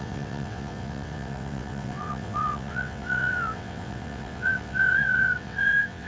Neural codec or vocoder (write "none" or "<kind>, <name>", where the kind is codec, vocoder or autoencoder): vocoder, WaveNeXt